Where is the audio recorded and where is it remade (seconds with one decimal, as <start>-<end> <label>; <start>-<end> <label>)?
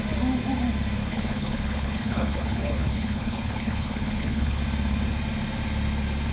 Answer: 0.0-1.0 recorded; 1.0-4.6 remade; 4.6-6.3 recorded